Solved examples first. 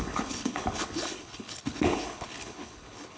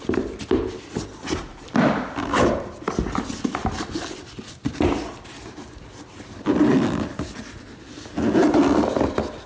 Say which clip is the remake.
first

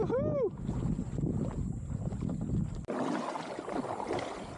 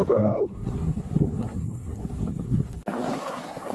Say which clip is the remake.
second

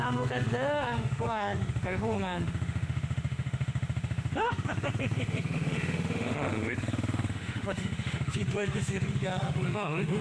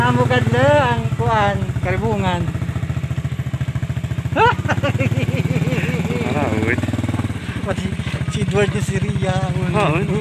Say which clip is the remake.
first